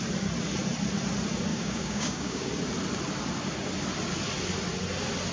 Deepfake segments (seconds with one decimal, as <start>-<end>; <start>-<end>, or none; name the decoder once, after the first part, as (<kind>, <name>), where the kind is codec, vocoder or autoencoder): 1.5-2.5 (codec, DAC)